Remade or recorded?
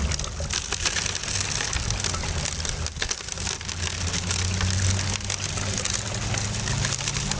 recorded